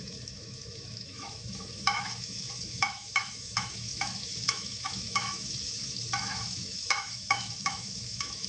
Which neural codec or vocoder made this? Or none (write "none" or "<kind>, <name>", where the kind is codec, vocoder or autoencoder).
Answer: autoencoder, DAC-VAE